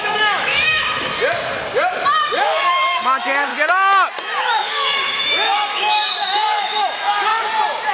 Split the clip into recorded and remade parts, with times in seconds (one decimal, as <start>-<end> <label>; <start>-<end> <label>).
0.0-1.1 remade; 1.1-2.4 recorded; 2.4-3.5 remade; 3.5-4.4 recorded; 4.4-7.3 remade; 7.3-7.9 recorded